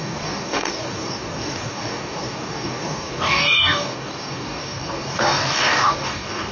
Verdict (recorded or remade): remade